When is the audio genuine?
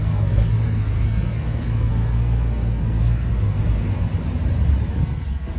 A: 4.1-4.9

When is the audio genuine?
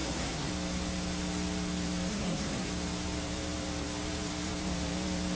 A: 0.5-2.1; 2.7-5.3